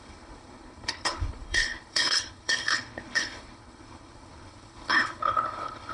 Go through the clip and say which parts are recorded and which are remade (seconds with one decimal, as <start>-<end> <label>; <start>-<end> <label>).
0.0-5.9 remade